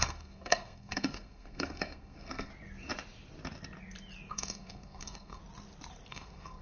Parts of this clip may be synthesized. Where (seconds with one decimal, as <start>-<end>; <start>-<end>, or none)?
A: 0.0-2.5; 4.3-5.4; 6.1-6.6